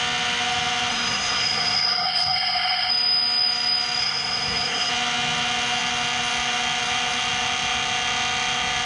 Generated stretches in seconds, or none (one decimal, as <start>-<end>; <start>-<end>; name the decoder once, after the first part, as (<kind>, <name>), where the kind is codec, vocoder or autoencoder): 0.9-2.9 (codec, SNAC); 4.0-4.9